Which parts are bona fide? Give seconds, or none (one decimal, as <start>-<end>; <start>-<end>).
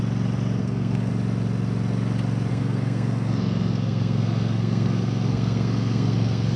0.0-0.6; 1.1-2.5